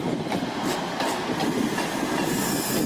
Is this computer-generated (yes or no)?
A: no